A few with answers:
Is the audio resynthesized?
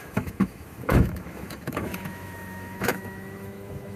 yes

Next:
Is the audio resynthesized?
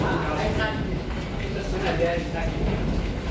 no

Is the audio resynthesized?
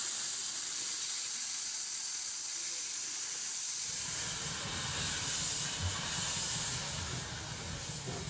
no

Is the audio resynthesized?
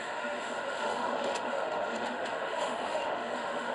yes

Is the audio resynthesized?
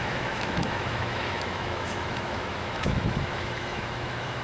yes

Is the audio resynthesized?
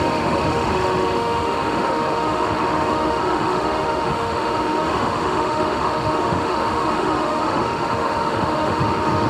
yes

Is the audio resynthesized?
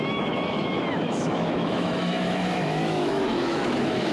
yes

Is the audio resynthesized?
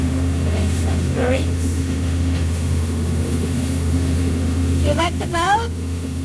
yes